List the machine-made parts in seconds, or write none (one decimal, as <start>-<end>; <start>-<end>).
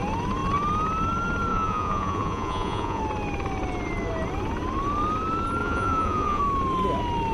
1.5-3.0; 5.6-6.4